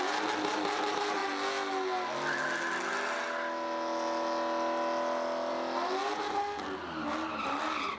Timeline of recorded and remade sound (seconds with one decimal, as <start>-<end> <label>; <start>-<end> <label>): 0.0-8.0 recorded